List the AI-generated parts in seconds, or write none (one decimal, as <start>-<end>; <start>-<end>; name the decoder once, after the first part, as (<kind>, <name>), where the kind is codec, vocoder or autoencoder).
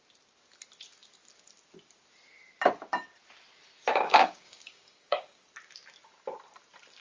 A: 3.9-5.4 (codec, DAC)